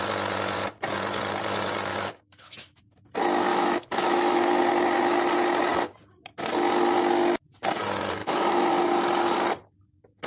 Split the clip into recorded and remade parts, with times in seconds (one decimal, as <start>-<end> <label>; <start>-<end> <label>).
0.0-1.9 recorded; 1.9-2.8 remade; 2.8-3.5 recorded; 3.5-4.6 remade; 4.6-8.2 recorded; 8.2-8.7 remade; 8.7-10.3 recorded